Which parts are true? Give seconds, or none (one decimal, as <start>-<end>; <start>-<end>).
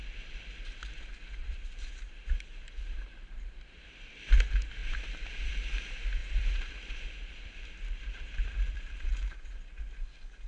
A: 0.0-1.4; 4.3-6.2; 9.8-10.5